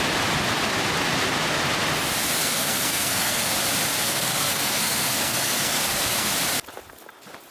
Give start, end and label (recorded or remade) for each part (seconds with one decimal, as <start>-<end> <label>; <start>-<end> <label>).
0.0-2.4 recorded; 2.4-3.5 remade; 3.5-4.0 recorded; 4.0-6.3 remade; 6.3-7.5 recorded